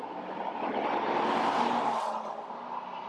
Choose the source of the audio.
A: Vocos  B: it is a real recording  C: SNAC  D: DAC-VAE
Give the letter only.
B